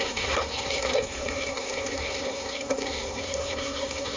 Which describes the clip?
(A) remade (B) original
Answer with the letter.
A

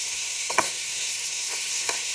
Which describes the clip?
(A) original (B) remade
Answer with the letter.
B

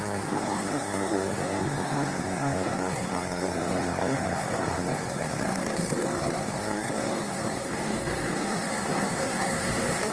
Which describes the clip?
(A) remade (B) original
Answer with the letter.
A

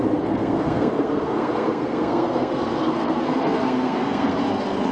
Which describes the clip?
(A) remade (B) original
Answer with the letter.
A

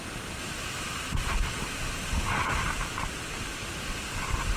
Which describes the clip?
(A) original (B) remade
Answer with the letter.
A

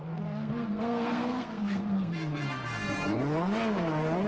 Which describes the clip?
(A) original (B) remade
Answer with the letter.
B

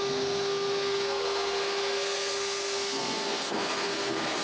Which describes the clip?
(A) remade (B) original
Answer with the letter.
A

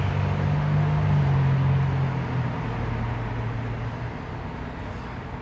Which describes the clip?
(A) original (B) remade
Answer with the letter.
A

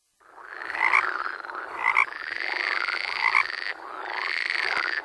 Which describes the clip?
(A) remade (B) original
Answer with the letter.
B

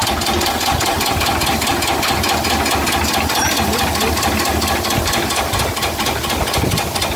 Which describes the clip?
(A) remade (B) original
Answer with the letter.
B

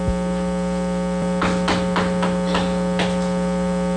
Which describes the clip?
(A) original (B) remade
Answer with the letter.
A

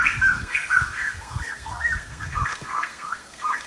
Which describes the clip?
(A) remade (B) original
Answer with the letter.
A